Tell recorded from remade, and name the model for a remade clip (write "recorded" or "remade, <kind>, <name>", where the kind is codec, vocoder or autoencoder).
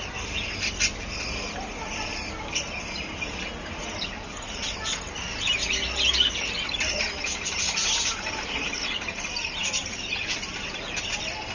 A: recorded